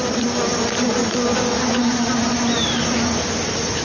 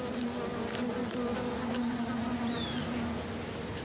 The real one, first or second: second